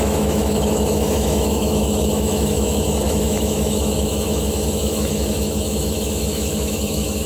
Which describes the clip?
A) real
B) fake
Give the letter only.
B